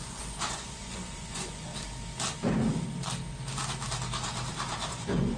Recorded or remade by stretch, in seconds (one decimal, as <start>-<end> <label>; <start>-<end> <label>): 0.0-1.7 remade; 1.7-4.9 recorded; 4.9-5.4 remade